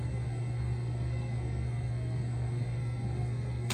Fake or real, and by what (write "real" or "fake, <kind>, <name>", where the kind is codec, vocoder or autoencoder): fake, codec, SNAC